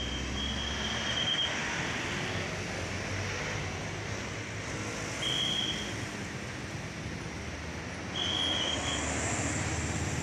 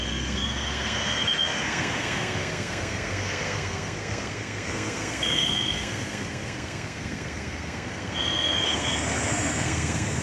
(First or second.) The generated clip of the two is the second